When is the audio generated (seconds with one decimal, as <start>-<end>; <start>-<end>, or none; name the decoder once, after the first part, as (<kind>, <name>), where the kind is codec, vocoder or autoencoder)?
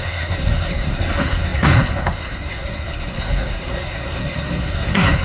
0.0-5.2 (codec, SNAC)